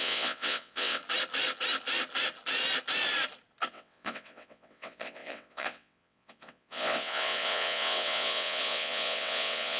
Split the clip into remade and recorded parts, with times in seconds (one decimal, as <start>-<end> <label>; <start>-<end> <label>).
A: 0.0-1.0 remade; 1.0-3.7 recorded; 3.7-9.8 remade